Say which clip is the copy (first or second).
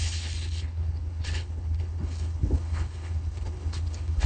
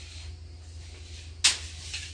first